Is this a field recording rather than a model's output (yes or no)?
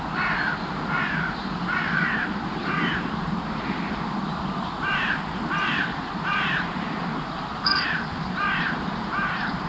no